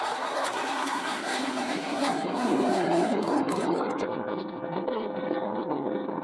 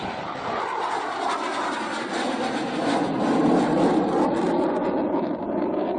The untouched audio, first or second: second